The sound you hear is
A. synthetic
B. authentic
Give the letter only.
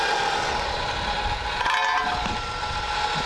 B